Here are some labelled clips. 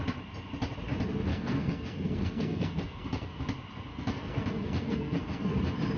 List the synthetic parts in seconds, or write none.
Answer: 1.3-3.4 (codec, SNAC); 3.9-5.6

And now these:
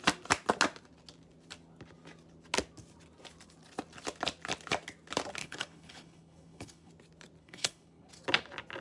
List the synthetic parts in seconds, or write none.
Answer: 5.4-6.9 (codec, HILCodec); 7.4-8.1

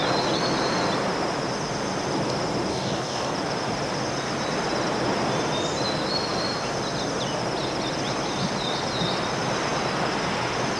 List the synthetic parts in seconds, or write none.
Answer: 2.7-3.3 (codec, DAC)

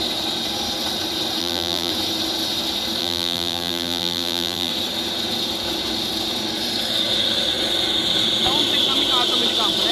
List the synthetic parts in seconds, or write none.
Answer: 1.4-1.9 (vocoder, BigVGAN v2); 3.0-4.7